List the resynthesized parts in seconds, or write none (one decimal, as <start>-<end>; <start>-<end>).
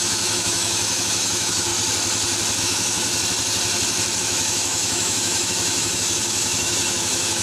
0.0-1.7; 2.6-3.1; 4.2-7.4